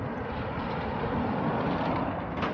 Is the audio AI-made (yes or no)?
no